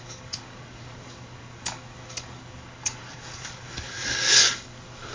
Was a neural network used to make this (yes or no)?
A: yes